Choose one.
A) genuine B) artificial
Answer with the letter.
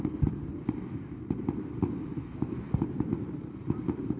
B